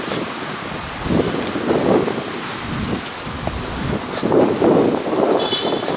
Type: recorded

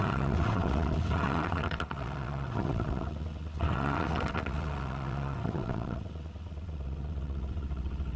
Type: remade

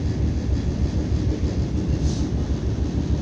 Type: recorded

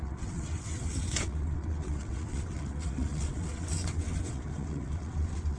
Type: remade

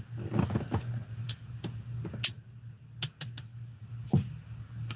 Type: recorded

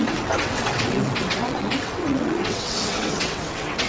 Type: remade